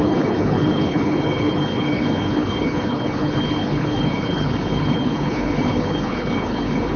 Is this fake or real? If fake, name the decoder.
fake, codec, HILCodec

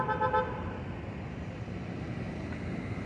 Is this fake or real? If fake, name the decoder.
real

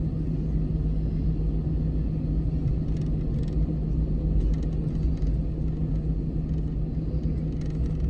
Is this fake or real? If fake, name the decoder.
real